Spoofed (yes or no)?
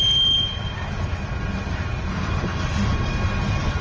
no